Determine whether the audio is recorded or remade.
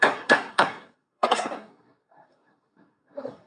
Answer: remade